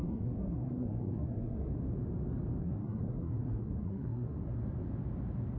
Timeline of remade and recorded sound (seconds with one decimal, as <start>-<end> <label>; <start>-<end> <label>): 0.0-1.7 remade; 1.7-2.6 recorded; 2.6-4.5 remade; 4.5-5.6 recorded